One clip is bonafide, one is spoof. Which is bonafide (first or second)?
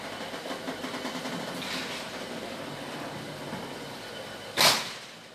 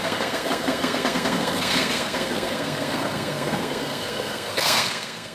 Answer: first